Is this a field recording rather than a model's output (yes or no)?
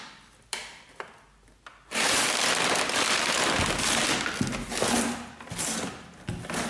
yes